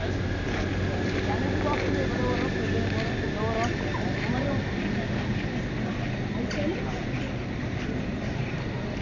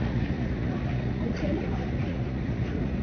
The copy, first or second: second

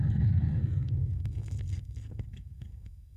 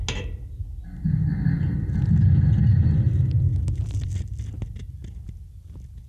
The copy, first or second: first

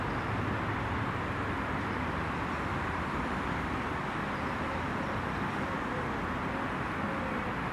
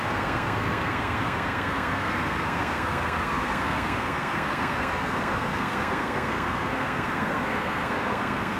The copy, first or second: second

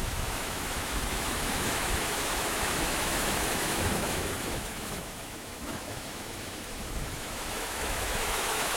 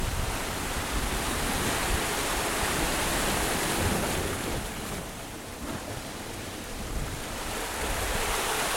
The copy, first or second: first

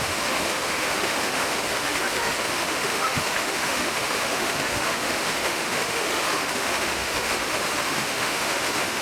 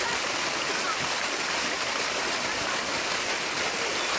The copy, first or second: first